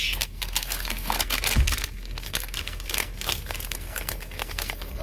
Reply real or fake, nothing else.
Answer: fake